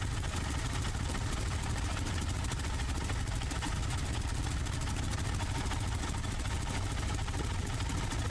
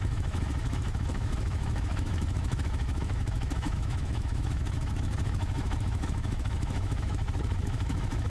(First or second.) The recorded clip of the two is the first